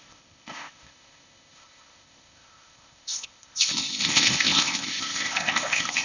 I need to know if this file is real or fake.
fake